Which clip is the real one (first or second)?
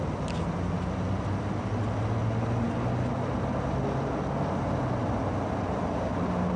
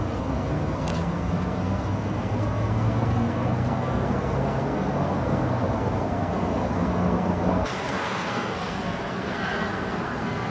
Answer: first